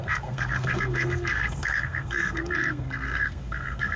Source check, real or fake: fake